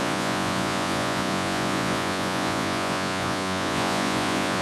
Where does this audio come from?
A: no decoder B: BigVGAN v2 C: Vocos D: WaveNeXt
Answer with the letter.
C